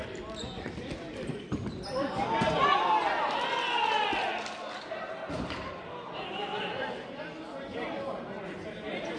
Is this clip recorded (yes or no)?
yes